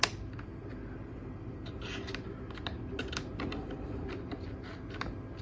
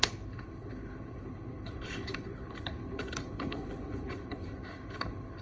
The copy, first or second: second